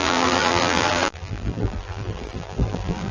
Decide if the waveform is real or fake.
fake